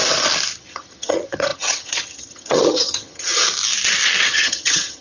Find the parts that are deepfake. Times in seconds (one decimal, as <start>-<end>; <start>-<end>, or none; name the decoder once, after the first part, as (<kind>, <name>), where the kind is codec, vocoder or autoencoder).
0.6-3.4 (vocoder, HiFi-GAN); 4.3-5.0